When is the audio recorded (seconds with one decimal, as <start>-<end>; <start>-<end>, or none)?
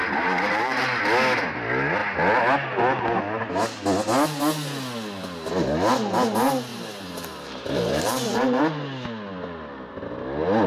1.0-6.7; 8.6-10.7